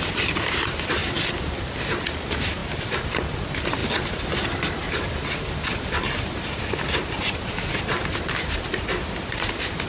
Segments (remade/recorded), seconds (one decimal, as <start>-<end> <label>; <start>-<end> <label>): 0.0-1.0 remade; 1.0-1.6 recorded; 1.6-3.8 remade; 3.8-7.8 recorded; 7.8-9.9 remade

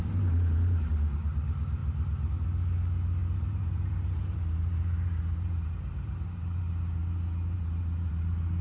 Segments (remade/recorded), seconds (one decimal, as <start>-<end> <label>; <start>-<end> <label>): 0.0-0.9 remade; 0.9-3.2 recorded; 3.2-6.6 remade; 6.6-7.0 recorded; 7.0-8.6 remade